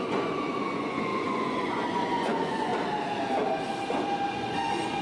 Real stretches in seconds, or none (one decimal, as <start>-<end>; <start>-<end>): 2.7-4.3